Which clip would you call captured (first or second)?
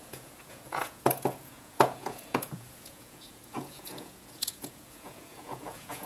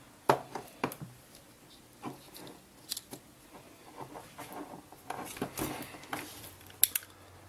second